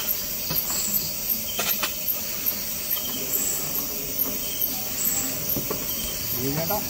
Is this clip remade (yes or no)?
no